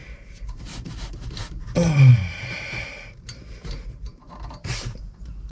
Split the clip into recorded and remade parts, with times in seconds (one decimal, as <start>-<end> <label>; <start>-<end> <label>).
0.0-5.5 remade